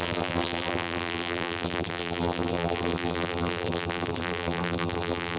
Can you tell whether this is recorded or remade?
remade